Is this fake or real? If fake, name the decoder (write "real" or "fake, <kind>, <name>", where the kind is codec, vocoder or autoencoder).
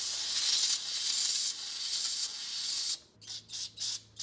real